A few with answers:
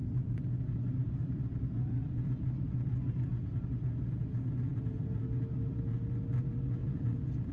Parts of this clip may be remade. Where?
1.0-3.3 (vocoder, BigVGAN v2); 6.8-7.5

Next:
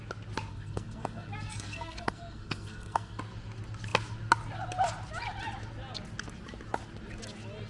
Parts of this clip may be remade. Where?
0.5-3.2 (codec, SNAC)

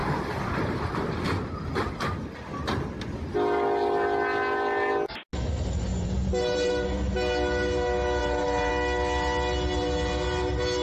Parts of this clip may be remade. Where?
0.0-1.1 (vocoder, BigVGAN v2); 5.9-6.7; 8.2-8.7

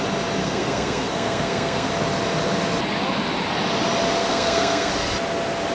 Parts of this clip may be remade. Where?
0.4-1.9 (codec, SNAC); 4.2-4.9

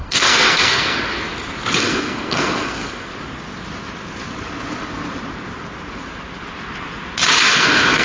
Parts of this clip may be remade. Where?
0.0-1.1 (codec, SNAC); 1.8-3.1; 7.5-8.0

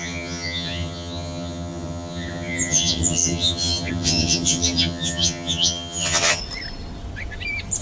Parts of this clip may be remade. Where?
0.0-6.4 (vocoder, HiFi-GAN)

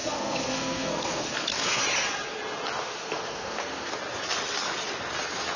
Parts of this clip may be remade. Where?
0.0-1.8 (codec, SNAC); 2.8-3.9

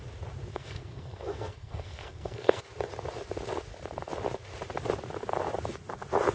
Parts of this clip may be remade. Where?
0.5-2.6 (codec, SNAC)